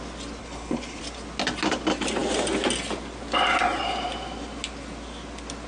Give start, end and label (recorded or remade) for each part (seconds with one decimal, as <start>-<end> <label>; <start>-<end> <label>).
0.0-0.4 recorded; 0.4-1.0 remade; 1.0-5.7 recorded